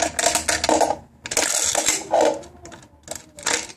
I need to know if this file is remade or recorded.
recorded